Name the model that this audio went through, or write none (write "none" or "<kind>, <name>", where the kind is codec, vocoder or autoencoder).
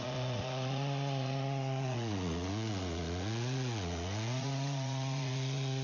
vocoder, Vocos